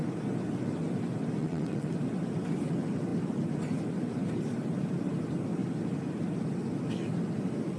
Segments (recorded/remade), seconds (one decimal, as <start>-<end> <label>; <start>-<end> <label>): 0.0-1.4 recorded; 1.4-1.9 remade; 1.9-7.8 recorded